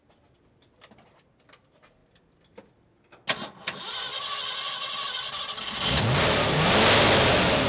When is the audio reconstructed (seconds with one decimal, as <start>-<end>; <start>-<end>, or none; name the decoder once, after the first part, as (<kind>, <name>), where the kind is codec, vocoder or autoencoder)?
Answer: none